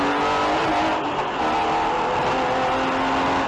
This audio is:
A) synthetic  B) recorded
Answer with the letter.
B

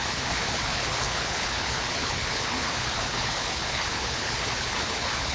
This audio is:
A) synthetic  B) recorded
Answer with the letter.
A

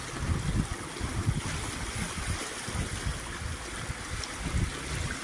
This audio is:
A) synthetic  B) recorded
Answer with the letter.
B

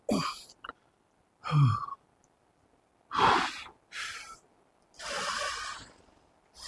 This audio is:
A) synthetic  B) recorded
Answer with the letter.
B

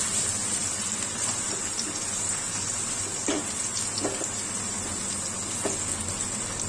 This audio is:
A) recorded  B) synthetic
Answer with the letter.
A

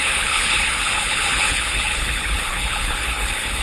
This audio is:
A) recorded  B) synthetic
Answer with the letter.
B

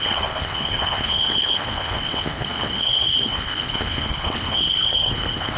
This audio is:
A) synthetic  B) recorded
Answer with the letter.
A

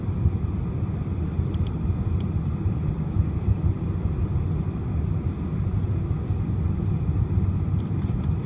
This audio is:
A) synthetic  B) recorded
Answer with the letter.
B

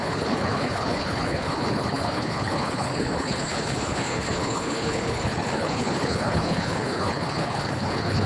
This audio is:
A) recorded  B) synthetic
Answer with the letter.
B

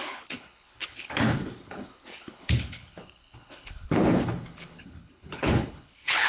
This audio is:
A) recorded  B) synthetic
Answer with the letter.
B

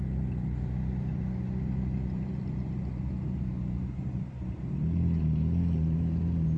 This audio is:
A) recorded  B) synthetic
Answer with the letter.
A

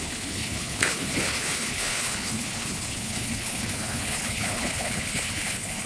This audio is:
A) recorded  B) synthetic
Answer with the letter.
B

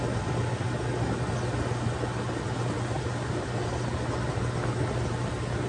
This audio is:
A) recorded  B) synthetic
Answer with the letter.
A